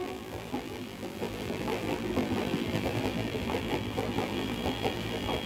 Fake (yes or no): yes